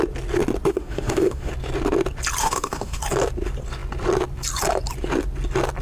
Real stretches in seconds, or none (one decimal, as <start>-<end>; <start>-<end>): 0.0-0.7; 1.5-2.4; 3.0-5.8